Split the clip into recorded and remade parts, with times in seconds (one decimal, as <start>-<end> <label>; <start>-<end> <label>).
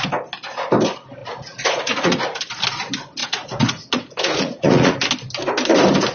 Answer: 0.0-1.2 recorded; 1.2-2.4 remade; 2.4-3.2 recorded; 3.2-4.9 remade; 4.9-6.1 recorded